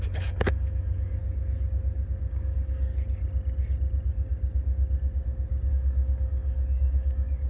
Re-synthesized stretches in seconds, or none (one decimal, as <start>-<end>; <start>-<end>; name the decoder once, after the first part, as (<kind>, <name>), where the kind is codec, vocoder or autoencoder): 0.0-1.2 (codec, DAC); 2.3-2.9; 5.7-7.5